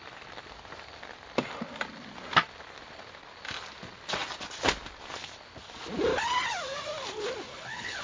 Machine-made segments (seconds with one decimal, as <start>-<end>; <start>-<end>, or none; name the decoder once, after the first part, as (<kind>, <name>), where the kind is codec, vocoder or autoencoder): 7.5-8.0 (codec, HILCodec)